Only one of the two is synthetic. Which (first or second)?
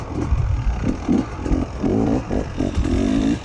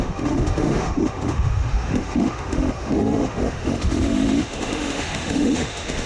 second